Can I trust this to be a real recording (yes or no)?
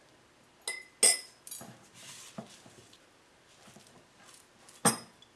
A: yes